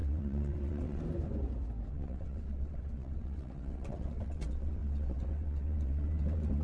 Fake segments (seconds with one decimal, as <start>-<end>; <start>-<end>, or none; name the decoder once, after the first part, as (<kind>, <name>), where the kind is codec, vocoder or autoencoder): 0.0-1.0 (vocoder, WaveNeXt); 1.9-6.6